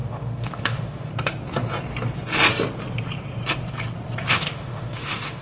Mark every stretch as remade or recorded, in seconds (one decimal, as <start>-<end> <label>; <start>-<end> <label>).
0.0-1.1 remade; 1.1-4.3 recorded; 4.3-5.4 remade